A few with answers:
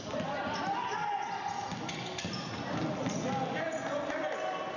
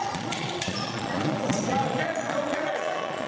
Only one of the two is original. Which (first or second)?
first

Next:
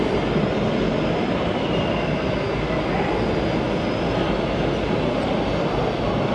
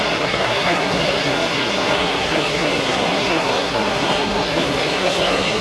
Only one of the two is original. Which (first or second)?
first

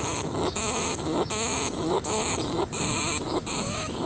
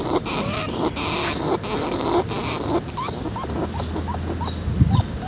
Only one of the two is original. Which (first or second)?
second